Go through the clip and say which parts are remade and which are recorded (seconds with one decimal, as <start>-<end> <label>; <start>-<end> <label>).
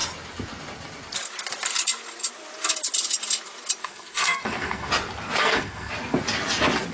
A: 0.0-3.8 recorded; 3.8-4.9 remade; 4.9-5.4 recorded; 5.4-5.9 remade; 5.9-6.9 recorded